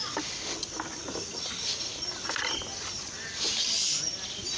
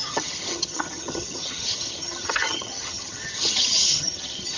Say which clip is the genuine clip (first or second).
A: first